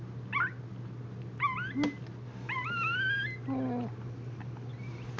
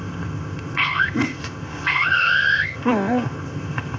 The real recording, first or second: first